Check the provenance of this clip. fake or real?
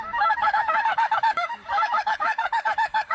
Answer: fake